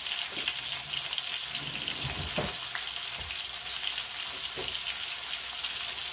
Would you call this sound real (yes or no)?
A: yes